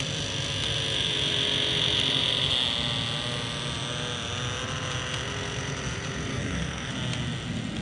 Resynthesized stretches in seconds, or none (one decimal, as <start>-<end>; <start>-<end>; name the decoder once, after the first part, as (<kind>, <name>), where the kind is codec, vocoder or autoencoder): 6.3-6.9 (codec, SNAC)